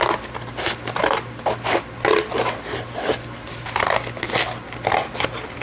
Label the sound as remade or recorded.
recorded